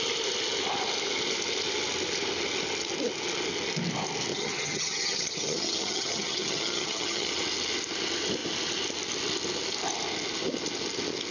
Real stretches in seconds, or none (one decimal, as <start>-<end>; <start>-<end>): 0.0-4.3; 7.3-11.3